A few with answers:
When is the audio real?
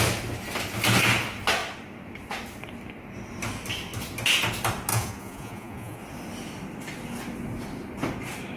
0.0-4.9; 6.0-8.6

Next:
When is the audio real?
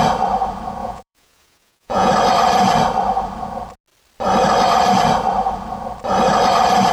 0.0-0.8; 2.1-6.9